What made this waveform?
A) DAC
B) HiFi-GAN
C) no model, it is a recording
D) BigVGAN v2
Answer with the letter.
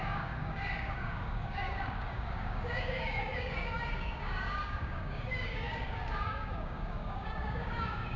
A